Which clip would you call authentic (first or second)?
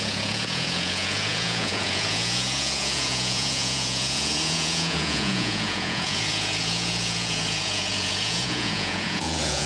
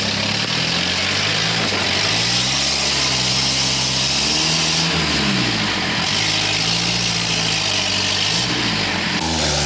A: second